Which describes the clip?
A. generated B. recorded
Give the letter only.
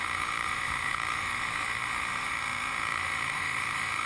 A